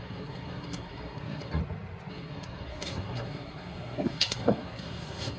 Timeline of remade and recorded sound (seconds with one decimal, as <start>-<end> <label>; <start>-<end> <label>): 0.0-1.6 remade; 1.6-2.1 recorded; 2.1-5.4 remade